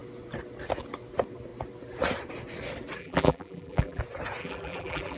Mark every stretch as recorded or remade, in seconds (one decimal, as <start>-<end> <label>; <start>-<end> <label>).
0.0-3.0 recorded; 3.0-4.0 remade; 4.0-4.4 recorded; 4.4-5.2 remade